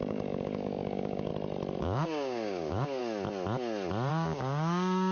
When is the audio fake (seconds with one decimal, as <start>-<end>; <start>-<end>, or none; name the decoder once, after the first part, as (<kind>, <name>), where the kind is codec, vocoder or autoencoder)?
0.0-1.3 (codec, DAC); 1.8-3.0; 4.1-5.1